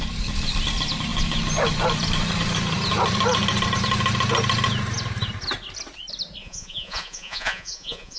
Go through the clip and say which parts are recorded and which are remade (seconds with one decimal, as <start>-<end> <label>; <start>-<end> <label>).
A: 0.0-6.4 recorded; 6.4-8.2 remade

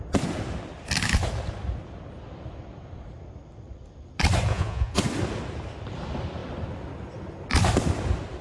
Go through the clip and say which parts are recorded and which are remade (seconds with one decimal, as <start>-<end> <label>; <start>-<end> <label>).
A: 0.0-4.5 recorded; 4.5-5.0 remade; 5.0-8.4 recorded

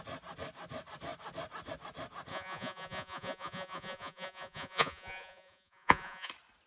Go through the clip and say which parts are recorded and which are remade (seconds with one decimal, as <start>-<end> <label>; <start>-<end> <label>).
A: 0.0-2.3 recorded; 2.3-6.3 remade; 6.3-6.7 recorded

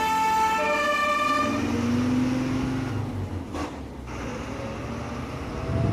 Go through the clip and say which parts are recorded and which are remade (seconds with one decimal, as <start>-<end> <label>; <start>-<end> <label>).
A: 0.0-5.9 recorded

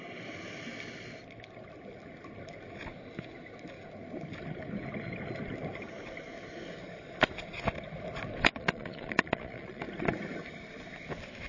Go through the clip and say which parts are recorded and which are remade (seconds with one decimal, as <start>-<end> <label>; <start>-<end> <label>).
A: 0.0-8.5 recorded; 8.5-9.8 remade; 9.8-11.5 recorded

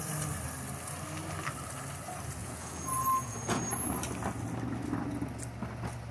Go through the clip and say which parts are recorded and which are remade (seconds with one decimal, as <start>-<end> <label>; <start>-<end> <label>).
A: 0.0-2.4 recorded; 2.4-3.6 remade; 3.6-6.1 recorded